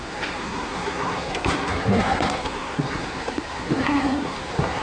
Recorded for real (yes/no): no